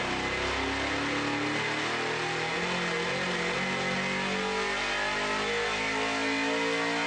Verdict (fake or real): real